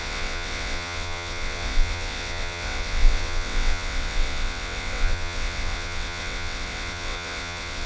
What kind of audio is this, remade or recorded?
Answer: remade